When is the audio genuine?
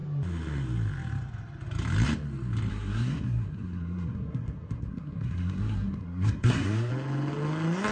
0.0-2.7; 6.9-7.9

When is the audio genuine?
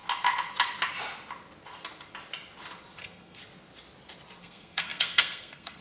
0.0-3.0; 3.4-4.4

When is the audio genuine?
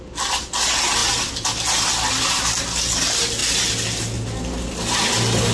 0.0-5.5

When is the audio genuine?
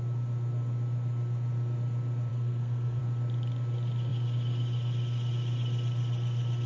0.0-2.3; 3.0-6.7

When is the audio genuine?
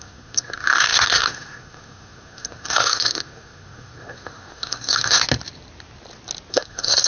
5.2-6.5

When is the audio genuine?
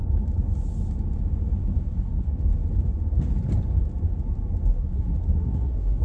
0.0-1.6; 2.4-4.7